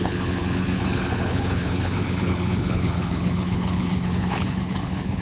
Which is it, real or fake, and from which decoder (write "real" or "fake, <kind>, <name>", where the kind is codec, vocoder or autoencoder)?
fake, codec, HILCodec